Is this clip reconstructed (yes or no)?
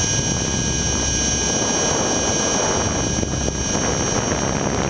no